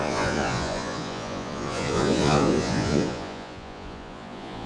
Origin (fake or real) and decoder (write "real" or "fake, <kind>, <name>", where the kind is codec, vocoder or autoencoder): fake, vocoder, Vocos